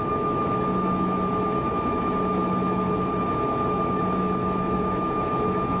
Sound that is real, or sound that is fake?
fake